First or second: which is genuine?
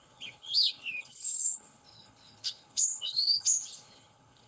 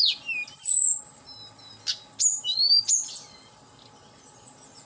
second